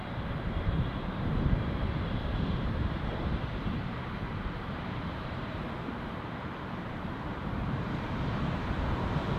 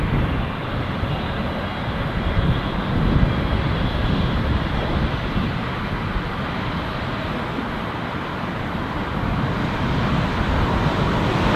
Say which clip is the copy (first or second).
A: first